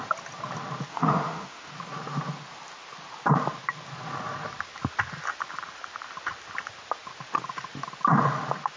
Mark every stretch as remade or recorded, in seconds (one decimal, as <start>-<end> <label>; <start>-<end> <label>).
0.0-0.9 recorded; 0.9-1.7 remade; 1.7-8.8 recorded

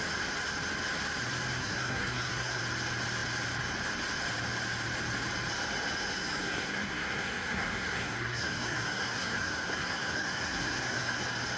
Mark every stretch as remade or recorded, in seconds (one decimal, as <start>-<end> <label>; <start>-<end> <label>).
0.0-1.6 recorded; 1.6-2.6 remade; 2.6-6.4 recorded; 6.4-11.2 remade; 11.2-11.6 recorded

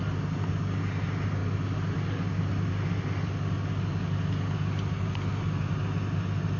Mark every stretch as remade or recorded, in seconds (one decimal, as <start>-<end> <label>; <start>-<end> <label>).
0.0-6.6 recorded